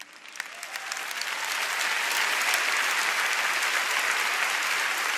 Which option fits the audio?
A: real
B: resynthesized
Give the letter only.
A